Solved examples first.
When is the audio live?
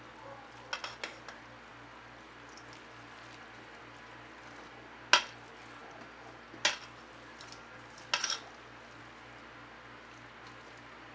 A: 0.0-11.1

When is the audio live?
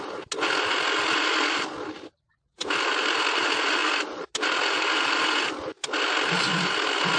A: 0.0-7.2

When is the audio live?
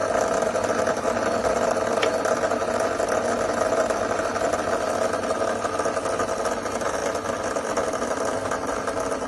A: 0.0-9.3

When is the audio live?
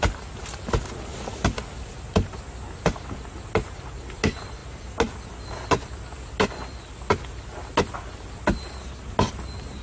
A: 0.0-9.8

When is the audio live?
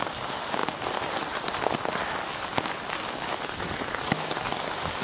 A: 0.0-5.0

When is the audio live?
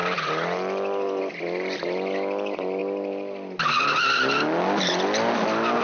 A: 0.0-5.8